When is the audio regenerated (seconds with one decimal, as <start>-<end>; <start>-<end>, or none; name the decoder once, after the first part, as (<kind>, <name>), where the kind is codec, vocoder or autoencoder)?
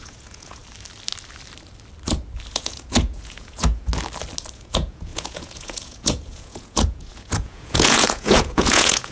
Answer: 0.0-0.6 (vocoder, Vocos); 2.5-3.9; 4.5-9.1